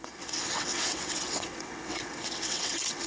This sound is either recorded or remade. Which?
remade